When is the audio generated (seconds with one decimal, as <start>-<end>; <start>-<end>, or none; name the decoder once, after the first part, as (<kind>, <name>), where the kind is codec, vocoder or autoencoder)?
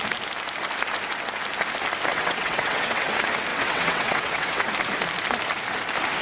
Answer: 2.1-3.1 (vocoder, WaveNeXt); 3.5-4.7